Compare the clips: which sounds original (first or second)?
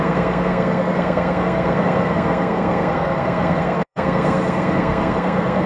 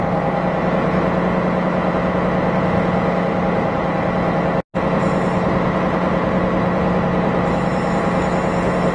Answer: second